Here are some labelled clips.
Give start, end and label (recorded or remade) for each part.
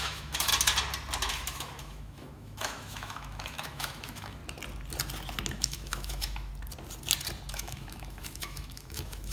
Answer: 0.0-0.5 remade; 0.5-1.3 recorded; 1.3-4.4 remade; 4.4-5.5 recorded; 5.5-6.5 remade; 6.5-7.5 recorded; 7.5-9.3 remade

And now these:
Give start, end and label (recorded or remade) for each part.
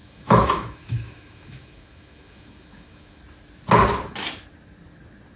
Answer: 0.0-3.2 remade; 3.2-5.4 recorded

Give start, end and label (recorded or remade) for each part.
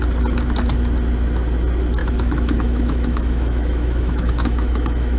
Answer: 0.0-2.0 recorded; 2.0-5.2 remade